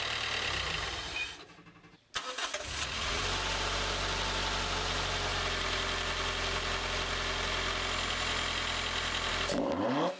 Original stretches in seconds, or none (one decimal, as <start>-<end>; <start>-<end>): 0.0-2.4; 3.2-10.2